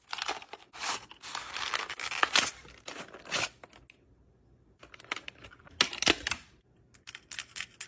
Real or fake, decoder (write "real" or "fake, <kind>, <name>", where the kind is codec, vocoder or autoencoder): real